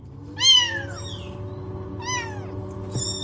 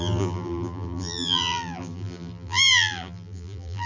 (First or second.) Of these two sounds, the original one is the first